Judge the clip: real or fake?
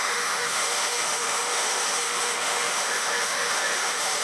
fake